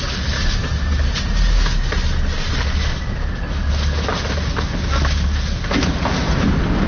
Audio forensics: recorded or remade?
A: recorded